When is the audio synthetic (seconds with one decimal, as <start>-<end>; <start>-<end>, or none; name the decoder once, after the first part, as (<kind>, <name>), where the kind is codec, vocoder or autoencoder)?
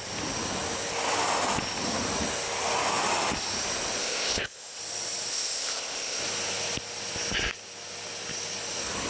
4.0-4.8 (codec, ZipCodec); 5.3-6.2